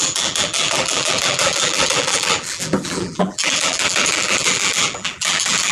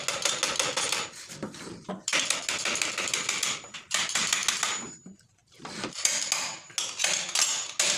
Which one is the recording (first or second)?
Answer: second